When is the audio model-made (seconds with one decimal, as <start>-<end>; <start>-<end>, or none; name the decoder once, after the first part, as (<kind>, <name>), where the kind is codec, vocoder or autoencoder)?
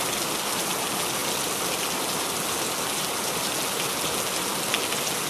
none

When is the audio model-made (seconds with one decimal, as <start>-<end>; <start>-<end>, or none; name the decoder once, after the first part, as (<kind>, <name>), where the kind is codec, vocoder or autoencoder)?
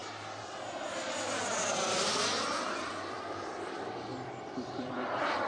2.7-5.5 (vocoder, BigVGAN v2)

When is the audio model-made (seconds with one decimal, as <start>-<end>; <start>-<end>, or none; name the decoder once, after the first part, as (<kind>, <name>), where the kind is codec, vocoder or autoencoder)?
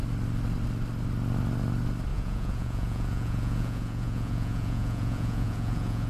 2.1-6.1 (vocoder, Vocos)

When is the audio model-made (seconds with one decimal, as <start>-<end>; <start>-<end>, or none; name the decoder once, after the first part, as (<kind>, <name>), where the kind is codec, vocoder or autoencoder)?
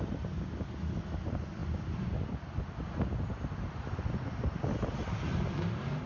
none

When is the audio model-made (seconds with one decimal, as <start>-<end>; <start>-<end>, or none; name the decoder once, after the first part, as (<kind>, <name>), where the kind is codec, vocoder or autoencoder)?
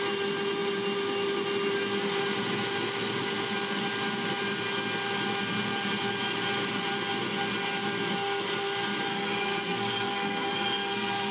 9.1-11.3 (codec, SNAC)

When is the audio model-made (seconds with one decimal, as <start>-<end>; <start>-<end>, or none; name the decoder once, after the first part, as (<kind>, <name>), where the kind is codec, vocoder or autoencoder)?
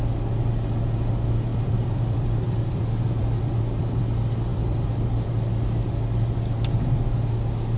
1.5-4.0 (vocoder, BigVGAN v2); 4.5-5.3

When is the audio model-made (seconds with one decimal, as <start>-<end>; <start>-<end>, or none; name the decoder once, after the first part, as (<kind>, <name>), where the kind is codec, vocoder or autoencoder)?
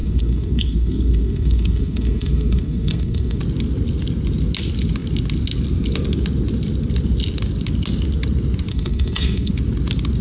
0.0-3.4 (codec, SNAC); 8.7-9.5